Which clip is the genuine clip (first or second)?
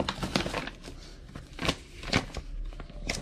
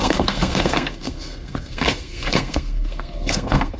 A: first